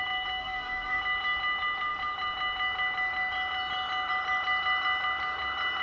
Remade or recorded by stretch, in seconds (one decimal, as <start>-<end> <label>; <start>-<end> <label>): 0.0-0.4 recorded; 0.4-1.0 remade; 1.0-5.8 recorded